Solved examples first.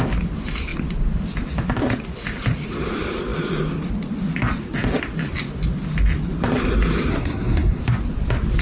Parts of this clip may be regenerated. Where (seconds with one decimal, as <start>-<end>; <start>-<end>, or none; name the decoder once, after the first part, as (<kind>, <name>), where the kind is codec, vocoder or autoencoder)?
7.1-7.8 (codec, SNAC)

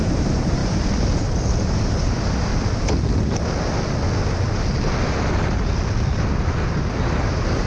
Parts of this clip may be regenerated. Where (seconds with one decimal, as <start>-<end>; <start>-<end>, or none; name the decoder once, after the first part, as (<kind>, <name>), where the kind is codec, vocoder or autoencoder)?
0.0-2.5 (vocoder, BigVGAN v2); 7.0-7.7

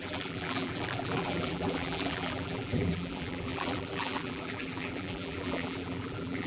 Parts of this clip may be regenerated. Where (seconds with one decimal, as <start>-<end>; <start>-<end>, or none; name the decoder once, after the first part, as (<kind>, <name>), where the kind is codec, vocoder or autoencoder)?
0.0-6.5 (vocoder, BigVGAN v2)